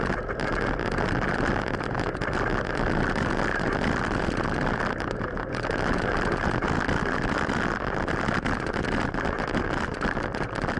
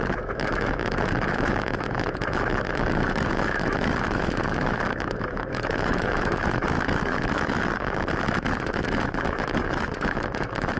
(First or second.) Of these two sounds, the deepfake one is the second